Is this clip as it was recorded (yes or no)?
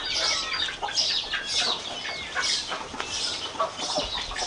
yes